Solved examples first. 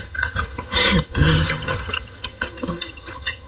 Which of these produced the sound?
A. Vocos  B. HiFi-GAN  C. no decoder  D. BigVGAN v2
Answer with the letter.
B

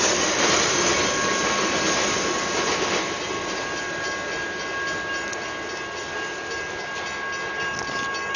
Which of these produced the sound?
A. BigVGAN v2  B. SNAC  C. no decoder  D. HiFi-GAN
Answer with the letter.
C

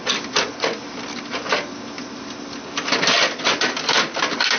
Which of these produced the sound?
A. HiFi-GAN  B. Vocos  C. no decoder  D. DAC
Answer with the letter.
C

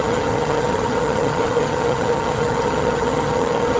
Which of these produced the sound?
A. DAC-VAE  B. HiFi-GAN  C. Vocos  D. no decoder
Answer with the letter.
B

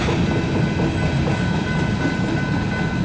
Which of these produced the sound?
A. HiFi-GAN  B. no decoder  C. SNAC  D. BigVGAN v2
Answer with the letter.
B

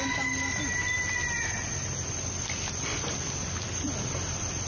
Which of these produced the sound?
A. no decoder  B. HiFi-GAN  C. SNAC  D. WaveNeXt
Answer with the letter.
A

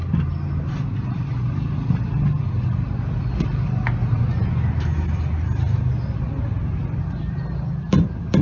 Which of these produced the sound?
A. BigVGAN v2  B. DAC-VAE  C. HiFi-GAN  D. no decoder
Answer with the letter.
D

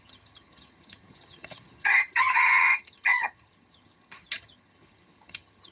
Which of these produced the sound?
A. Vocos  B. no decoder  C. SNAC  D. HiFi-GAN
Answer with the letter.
D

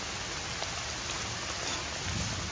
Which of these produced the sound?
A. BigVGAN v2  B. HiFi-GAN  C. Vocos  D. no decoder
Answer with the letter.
D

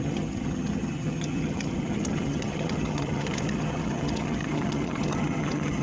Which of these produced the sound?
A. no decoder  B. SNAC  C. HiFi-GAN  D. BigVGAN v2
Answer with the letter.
C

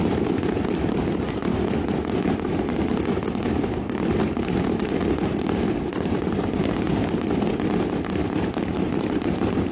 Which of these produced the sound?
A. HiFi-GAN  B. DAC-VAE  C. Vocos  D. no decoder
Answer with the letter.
D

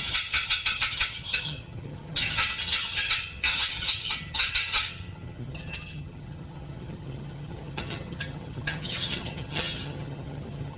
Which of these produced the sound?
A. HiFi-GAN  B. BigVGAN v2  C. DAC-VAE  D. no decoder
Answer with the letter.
A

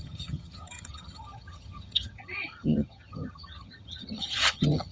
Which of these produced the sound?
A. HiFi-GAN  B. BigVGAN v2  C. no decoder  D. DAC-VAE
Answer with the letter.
A